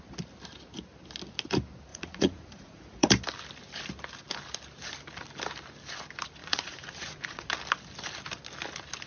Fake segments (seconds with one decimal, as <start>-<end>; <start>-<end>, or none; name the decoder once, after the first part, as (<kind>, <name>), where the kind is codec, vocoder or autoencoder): 1.9-3.1 (vocoder, Vocos); 6.4-7.5